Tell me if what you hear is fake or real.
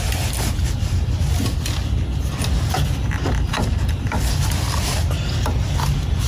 real